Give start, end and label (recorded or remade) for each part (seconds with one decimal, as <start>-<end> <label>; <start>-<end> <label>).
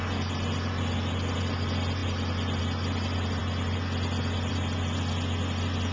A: 0.0-5.9 recorded